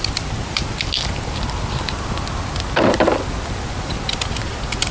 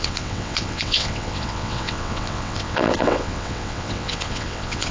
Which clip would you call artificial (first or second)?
second